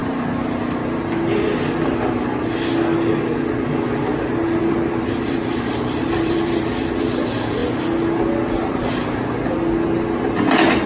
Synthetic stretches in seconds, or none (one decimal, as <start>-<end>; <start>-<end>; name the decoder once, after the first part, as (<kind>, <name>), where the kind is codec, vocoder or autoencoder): 4.6-6.7 (vocoder, BigVGAN v2)